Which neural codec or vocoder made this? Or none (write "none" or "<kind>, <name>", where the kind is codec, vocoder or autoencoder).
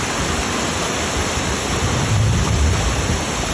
none